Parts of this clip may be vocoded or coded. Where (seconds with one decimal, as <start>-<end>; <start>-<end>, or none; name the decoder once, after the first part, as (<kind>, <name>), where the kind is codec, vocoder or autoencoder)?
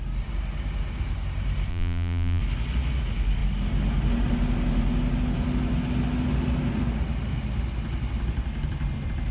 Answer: 1.7-2.4 (vocoder, BigVGAN v2)